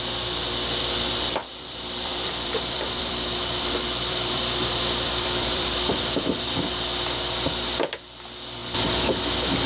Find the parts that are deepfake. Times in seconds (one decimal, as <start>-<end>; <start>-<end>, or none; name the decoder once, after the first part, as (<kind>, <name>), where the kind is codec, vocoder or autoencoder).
1.4-6.5 (vocoder, BigVGAN v2)